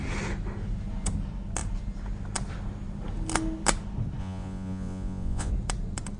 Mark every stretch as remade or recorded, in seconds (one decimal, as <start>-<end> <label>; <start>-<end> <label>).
0.0-4.2 recorded; 4.2-5.5 remade; 5.5-6.2 recorded